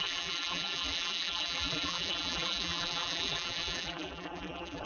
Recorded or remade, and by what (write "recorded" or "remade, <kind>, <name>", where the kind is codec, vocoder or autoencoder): remade, vocoder, BigVGAN v2